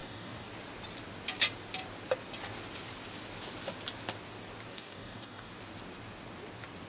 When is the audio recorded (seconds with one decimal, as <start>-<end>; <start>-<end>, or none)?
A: 0.5-4.7; 5.5-6.9